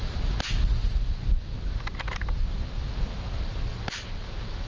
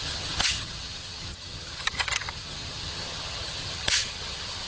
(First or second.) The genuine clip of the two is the first